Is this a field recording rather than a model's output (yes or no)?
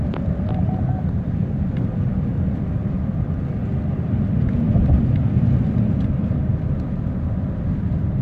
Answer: yes